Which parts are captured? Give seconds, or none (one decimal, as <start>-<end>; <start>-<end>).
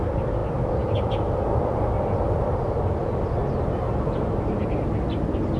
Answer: 0.0-5.6